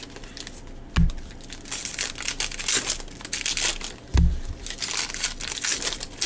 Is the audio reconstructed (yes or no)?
no